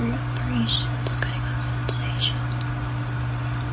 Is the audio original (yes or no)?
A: yes